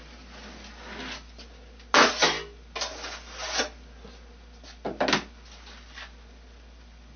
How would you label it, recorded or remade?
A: recorded